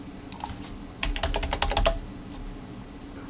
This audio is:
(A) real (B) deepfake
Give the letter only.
A